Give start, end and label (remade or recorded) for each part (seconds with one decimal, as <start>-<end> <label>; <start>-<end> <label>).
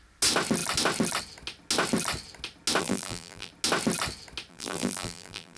0.0-2.8 recorded; 2.8-3.5 remade; 3.5-4.5 recorded; 4.5-5.6 remade